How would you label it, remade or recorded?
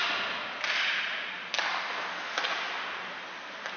recorded